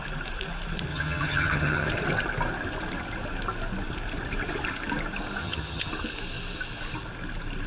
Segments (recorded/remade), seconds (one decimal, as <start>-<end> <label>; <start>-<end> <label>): 0.0-0.9 recorded; 0.9-1.9 remade; 1.9-5.4 recorded; 5.4-5.9 remade; 5.9-7.7 recorded